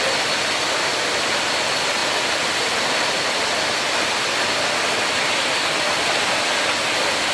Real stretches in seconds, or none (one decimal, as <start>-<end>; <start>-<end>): 0.0-7.3